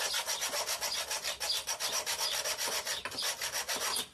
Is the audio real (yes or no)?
yes